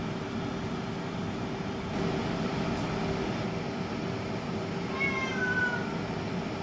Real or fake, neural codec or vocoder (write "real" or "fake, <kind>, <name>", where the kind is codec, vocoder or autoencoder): real